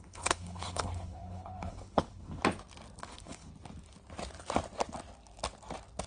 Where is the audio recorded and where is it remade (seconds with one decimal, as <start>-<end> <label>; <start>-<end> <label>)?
0.0-2.4 remade; 2.4-3.0 recorded; 3.0-3.5 remade; 3.5-6.1 recorded